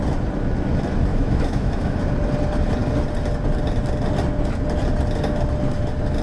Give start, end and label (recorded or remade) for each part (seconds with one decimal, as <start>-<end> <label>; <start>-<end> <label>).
0.0-1.1 recorded; 1.1-2.0 remade; 2.0-6.2 recorded